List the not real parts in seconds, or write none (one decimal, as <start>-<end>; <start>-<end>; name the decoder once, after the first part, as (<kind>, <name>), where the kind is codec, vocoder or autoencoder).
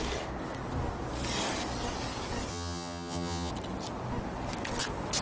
2.5-3.5 (vocoder, HiFi-GAN)